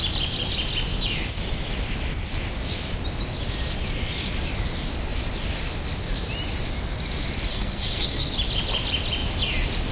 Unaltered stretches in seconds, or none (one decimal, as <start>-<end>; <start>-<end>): 0.0-7.5; 8.3-9.9